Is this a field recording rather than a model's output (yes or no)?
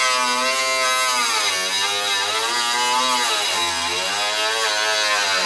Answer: yes